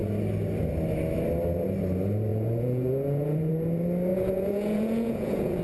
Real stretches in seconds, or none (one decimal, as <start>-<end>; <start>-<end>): 0.0-2.3; 3.5-4.1